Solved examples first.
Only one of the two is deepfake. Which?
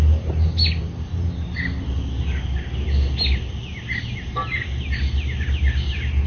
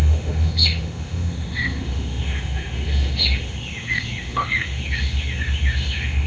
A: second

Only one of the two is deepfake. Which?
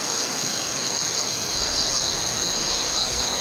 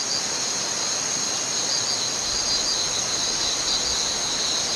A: first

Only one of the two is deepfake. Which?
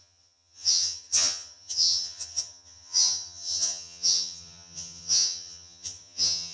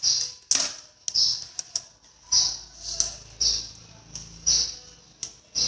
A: first